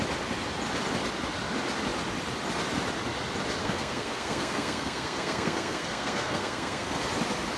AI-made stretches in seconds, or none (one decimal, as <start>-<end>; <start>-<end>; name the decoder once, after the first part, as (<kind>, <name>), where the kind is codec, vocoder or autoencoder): 3.6-7.0 (codec, SNAC)